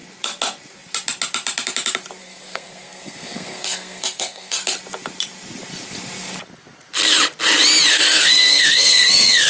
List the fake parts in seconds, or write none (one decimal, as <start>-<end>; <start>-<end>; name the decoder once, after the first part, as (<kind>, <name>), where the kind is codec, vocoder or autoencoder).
2.2-4.6 (codec, SNAC); 7.9-9.5